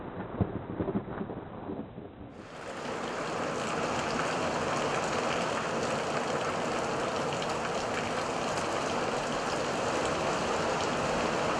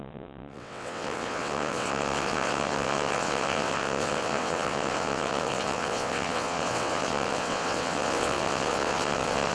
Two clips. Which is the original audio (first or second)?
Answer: first